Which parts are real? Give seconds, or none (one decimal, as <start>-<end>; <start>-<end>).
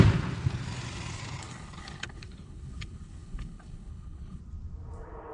0.0-1.4; 4.4-5.3